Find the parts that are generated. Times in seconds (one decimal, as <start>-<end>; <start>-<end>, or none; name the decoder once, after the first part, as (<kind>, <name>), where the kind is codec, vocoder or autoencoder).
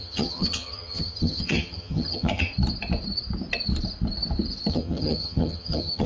0.0-2.5 (vocoder, HiFi-GAN); 4.7-6.1